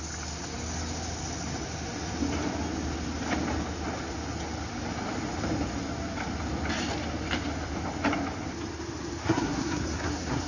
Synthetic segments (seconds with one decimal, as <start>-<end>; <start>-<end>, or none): 9.2-10.5

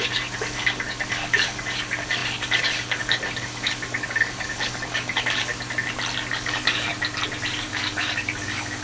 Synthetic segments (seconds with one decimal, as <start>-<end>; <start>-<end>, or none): 0.0-5.5; 6.3-6.9; 7.6-8.8